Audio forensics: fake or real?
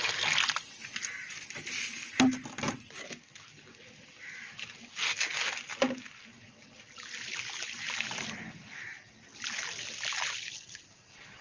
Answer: real